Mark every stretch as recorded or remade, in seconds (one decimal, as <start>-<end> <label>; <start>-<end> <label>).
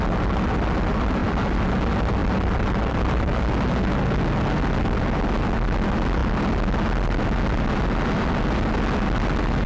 0.0-1.2 recorded; 1.2-1.8 remade; 1.8-2.2 recorded; 2.2-3.4 remade; 3.4-9.7 recorded